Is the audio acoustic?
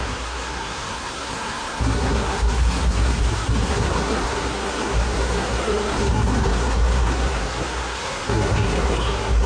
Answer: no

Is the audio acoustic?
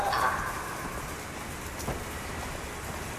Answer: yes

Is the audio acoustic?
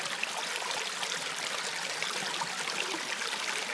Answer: yes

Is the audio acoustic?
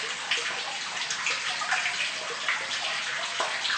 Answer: yes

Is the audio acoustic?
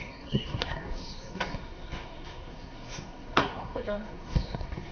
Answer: no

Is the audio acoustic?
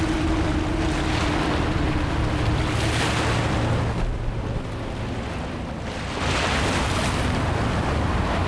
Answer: yes